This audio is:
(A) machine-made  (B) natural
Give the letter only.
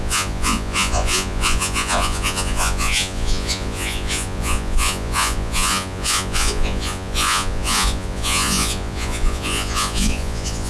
A